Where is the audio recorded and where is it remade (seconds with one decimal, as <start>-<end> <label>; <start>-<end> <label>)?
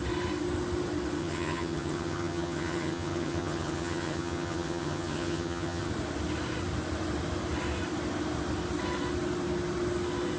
0.0-1.2 recorded; 1.2-5.9 remade; 5.9-10.4 recorded